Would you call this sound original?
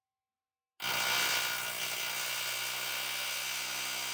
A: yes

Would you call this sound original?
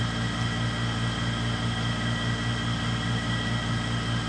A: yes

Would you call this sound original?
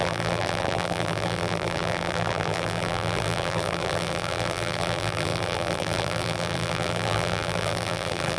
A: no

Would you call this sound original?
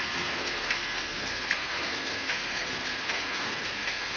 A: no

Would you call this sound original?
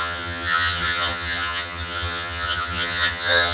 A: no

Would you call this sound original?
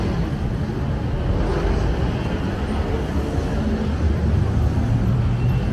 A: yes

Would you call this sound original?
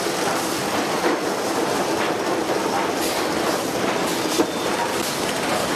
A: no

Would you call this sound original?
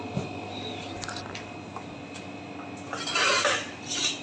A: yes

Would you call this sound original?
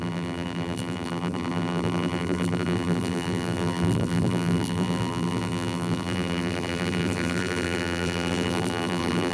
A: no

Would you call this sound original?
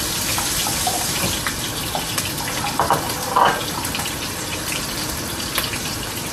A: yes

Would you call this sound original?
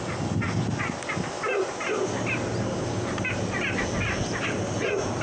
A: yes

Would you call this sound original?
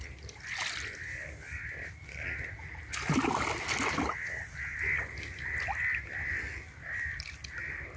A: yes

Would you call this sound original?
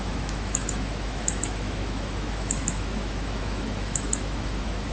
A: no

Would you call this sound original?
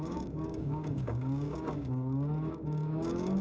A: no